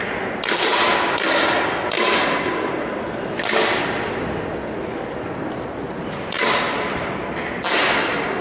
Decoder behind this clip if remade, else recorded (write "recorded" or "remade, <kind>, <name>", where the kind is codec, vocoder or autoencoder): recorded